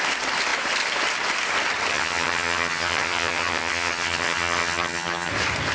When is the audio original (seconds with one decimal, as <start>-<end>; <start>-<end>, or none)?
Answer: 0.0-1.9; 5.3-5.7